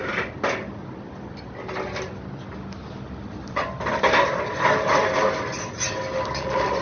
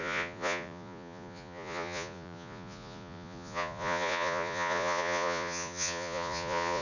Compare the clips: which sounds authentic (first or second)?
first